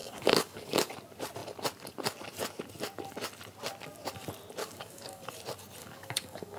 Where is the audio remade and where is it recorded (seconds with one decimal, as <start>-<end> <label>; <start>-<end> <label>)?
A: 0.0-0.9 remade; 0.9-4.6 recorded; 4.6-5.3 remade; 5.3-5.8 recorded; 5.8-6.6 remade